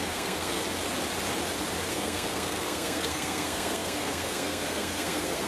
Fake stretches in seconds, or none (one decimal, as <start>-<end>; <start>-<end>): 0.0-0.6; 1.9-5.5